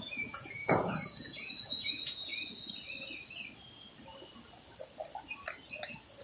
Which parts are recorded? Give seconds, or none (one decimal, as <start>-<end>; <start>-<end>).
2.3-6.2